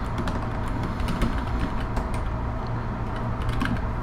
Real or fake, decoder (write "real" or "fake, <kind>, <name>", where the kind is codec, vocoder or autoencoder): real